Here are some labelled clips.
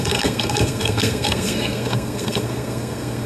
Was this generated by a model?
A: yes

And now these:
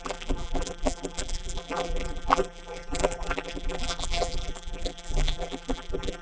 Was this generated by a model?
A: yes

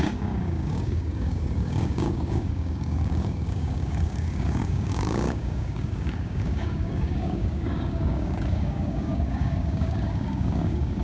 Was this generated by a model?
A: yes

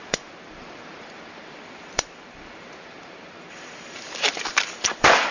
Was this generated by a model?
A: yes